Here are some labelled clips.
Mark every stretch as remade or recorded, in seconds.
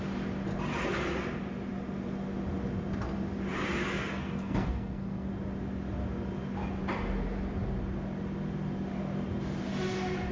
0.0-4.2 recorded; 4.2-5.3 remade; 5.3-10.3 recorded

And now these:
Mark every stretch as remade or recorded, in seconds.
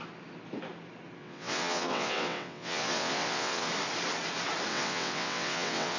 0.0-1.2 recorded; 1.2-3.7 remade; 3.7-4.7 recorded; 4.7-6.0 remade